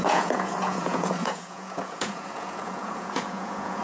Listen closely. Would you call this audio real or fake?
fake